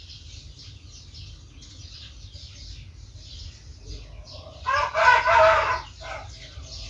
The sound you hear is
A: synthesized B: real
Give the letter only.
B